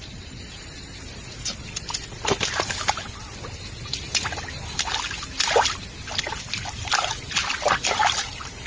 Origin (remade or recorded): recorded